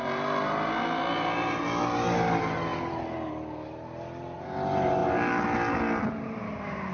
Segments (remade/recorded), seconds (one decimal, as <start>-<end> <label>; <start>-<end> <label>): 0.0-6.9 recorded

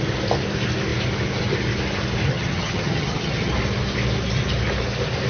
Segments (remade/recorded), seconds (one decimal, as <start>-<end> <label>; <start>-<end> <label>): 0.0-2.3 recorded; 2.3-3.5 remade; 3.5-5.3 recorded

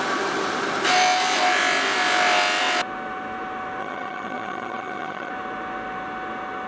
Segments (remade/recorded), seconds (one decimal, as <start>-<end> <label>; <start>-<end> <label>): 0.0-3.8 recorded; 3.8-5.3 remade; 5.3-6.7 recorded

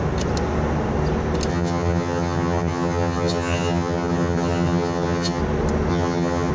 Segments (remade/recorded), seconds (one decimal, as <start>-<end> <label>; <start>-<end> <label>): 0.0-1.5 recorded; 1.5-5.4 remade; 5.4-5.9 recorded; 5.9-6.5 remade